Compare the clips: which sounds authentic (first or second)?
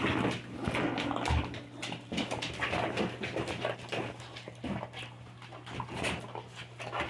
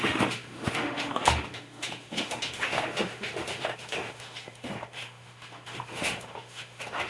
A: first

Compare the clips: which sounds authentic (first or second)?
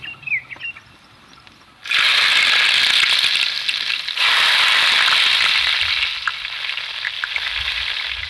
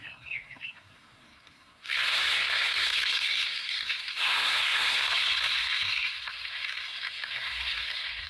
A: first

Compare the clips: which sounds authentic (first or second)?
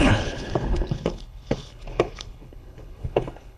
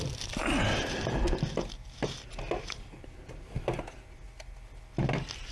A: second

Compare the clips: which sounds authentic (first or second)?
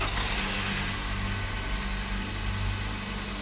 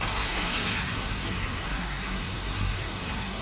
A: first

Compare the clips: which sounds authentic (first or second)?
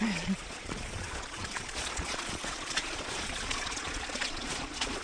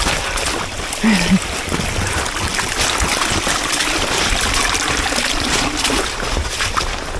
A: second